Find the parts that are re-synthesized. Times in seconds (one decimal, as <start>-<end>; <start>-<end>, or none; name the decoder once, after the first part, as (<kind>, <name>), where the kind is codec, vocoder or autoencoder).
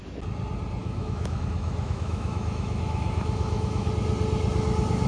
0.8-3.9 (autoencoder, DAC-VAE)